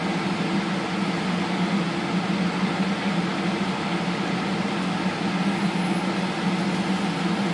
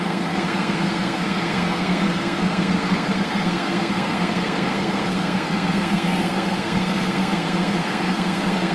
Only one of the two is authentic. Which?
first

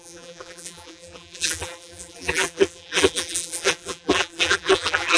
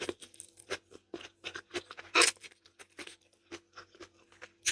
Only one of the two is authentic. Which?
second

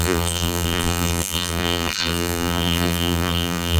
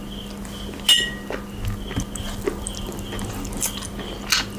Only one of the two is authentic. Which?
second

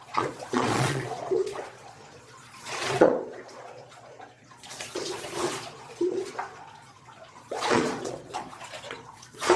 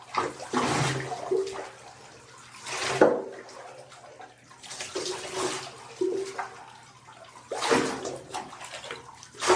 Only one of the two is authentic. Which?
second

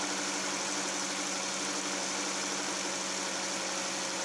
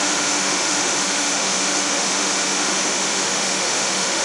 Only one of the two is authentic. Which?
first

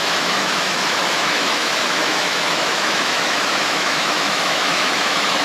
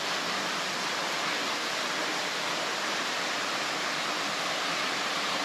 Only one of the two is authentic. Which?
second